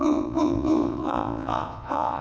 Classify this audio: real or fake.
fake